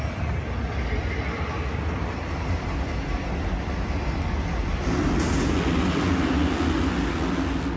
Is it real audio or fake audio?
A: real